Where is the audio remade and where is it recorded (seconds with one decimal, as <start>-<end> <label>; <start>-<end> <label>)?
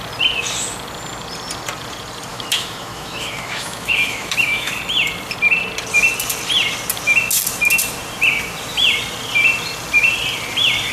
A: 0.0-2.3 recorded; 2.3-4.7 remade; 4.7-10.9 recorded